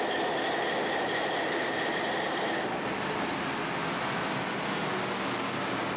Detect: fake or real real